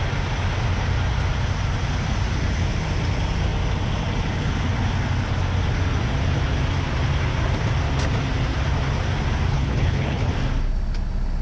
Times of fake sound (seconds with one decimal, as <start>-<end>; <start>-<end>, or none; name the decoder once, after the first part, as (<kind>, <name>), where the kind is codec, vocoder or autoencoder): 9.5-10.3 (codec, HILCodec)